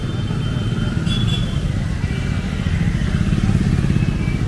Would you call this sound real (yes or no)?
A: yes